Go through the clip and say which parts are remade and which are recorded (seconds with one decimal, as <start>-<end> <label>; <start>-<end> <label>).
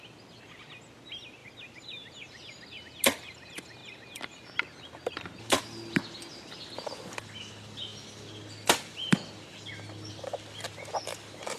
0.0-1.4 recorded; 1.4-2.8 remade; 2.8-11.6 recorded